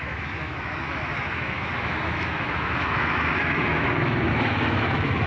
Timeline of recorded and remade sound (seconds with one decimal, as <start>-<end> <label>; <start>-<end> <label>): 0.0-5.3 remade